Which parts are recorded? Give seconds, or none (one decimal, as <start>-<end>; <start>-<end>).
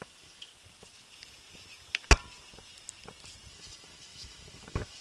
0.5-3.5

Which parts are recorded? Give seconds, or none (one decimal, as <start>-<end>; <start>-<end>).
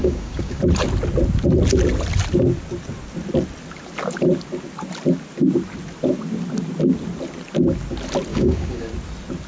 0.6-8.3; 8.9-9.5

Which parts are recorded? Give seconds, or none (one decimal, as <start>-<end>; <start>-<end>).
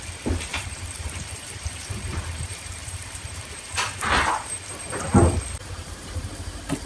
0.0-0.5; 4.6-5.8; 6.3-6.9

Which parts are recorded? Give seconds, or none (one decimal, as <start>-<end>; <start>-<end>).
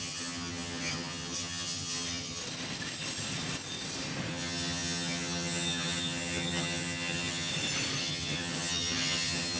2.4-4.3; 7.5-8.0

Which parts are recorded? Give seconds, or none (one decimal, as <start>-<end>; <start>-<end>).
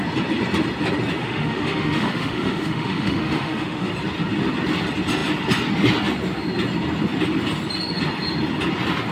0.0-1.2; 3.9-9.1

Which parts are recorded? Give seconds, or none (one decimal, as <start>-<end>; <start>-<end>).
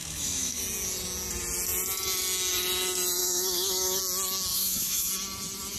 0.6-3.2; 4.0-4.5; 5.1-5.8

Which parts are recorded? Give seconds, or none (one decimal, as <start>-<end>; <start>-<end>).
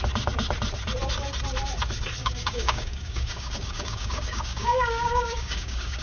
0.0-2.2